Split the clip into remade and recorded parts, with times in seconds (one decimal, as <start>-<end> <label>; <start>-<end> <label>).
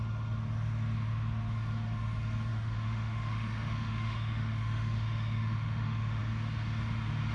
0.0-2.5 recorded; 2.5-6.2 remade; 6.2-7.3 recorded